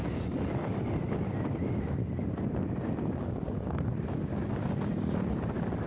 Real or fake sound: real